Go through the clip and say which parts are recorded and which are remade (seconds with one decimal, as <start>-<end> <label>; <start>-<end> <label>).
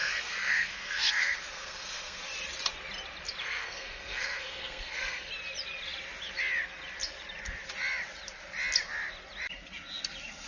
0.0-2.2 remade; 2.2-3.4 recorded; 3.4-5.3 remade; 5.3-10.5 recorded